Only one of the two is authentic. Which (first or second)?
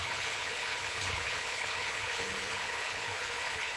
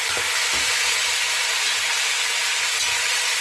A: second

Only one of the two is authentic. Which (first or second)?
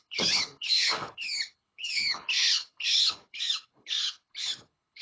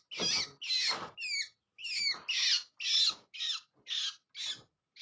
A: second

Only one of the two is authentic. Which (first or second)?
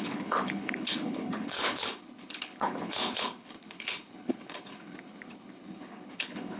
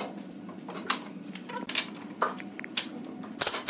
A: second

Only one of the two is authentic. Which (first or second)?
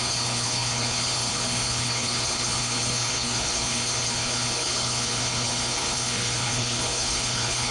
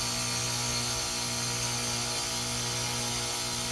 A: second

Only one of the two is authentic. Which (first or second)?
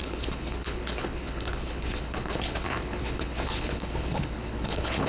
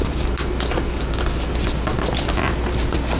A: second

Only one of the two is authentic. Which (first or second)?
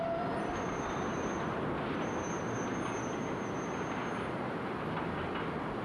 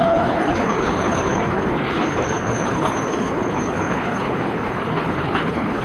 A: first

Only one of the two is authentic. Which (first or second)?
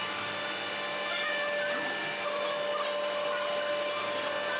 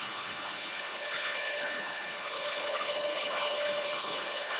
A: first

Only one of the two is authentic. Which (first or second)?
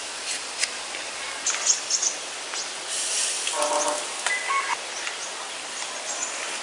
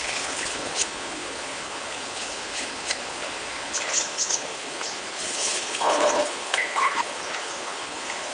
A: first